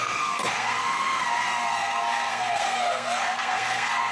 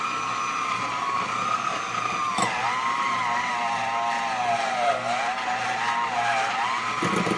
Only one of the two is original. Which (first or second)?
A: second